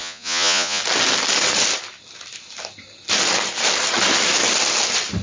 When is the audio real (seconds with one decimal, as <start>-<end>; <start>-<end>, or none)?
0.8-5.2